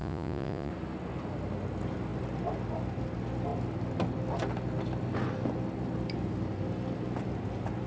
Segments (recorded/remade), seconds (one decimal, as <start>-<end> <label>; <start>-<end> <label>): 0.0-0.7 remade; 0.7-7.9 recorded